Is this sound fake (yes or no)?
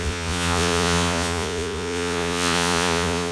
yes